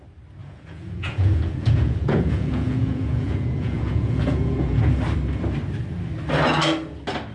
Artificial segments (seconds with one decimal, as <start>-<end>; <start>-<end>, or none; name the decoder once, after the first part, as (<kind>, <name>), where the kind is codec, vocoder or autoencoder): 0.4-4.8 (vocoder, Vocos)